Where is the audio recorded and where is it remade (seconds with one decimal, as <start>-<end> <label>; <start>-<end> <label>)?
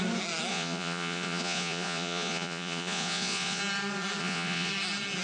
0.0-0.5 recorded; 0.5-3.6 remade; 3.6-4.2 recorded; 4.2-4.7 remade; 4.7-5.2 recorded